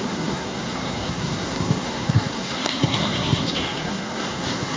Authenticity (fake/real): fake